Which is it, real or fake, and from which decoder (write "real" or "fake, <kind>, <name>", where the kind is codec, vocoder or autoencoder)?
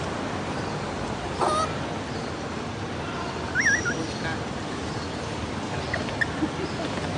real